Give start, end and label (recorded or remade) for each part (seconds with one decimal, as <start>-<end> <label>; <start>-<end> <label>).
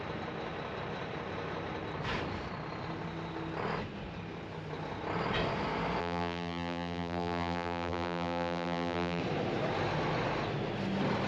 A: 0.0-6.0 recorded; 6.0-9.2 remade; 9.2-11.3 recorded